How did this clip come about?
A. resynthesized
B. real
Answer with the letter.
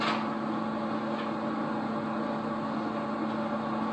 B